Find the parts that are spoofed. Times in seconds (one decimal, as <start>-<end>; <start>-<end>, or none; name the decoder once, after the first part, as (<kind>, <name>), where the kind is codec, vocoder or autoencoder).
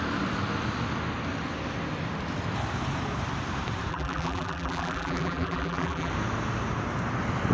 3.9-6.1 (vocoder, BigVGAN v2)